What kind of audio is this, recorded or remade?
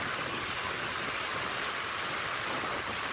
recorded